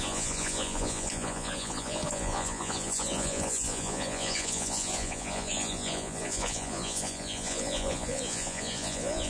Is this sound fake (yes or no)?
yes